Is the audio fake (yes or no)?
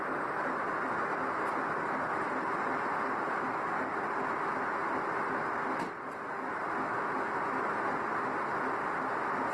no